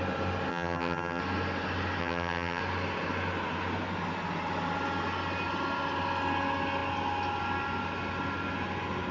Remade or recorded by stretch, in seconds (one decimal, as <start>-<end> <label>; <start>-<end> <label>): 0.0-0.5 recorded; 0.5-1.2 remade; 1.2-2.0 recorded; 2.0-2.6 remade; 2.6-9.1 recorded